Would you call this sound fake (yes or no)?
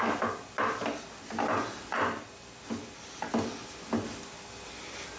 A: no